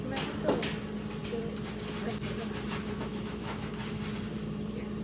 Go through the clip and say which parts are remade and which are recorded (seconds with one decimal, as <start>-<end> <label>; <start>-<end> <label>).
0.0-2.8 recorded; 2.8-3.7 remade; 3.7-5.0 recorded